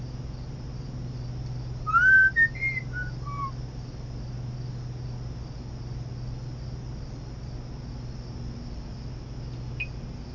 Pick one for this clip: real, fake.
real